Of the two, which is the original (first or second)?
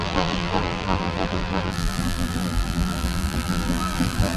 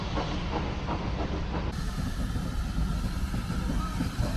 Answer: second